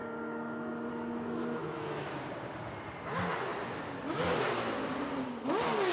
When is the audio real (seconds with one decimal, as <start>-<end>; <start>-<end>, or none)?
0.0-1.6; 2.1-5.9